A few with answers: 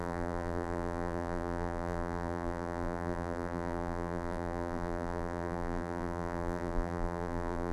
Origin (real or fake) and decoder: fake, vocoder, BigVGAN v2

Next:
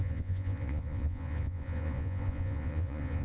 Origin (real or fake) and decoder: fake, vocoder, Vocos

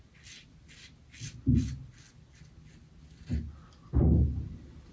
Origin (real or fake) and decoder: real